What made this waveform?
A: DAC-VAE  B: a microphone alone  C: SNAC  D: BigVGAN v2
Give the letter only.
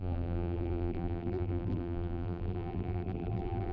D